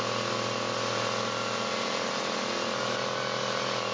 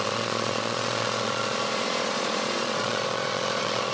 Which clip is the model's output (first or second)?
second